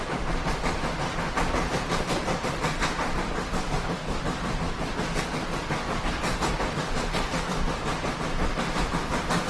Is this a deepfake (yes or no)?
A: no